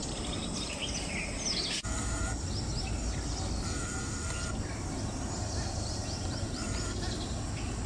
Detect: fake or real real